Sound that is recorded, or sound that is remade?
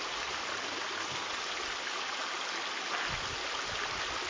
recorded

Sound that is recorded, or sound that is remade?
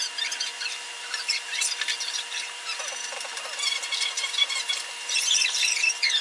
remade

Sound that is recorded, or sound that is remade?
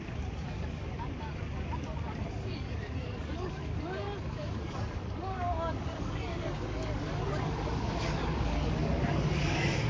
remade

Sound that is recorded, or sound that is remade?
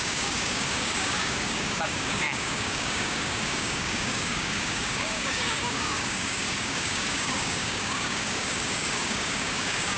remade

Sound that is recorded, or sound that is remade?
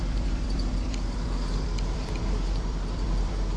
remade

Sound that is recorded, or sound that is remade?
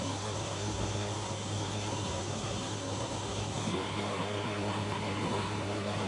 remade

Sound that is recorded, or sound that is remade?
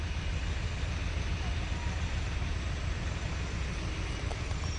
recorded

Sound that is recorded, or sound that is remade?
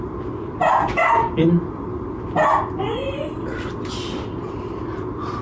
recorded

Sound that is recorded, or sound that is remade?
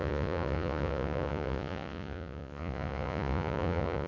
remade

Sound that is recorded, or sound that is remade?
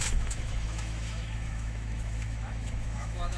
remade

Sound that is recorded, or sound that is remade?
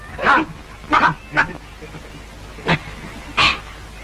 recorded